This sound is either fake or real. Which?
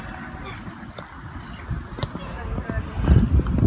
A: real